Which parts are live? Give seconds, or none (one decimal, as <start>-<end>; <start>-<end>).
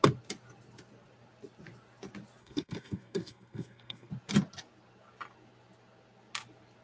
0.0-2.4; 4.1-6.8